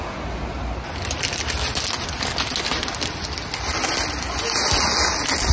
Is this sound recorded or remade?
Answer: recorded